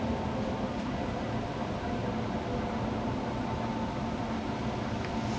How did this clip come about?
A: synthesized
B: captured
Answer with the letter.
B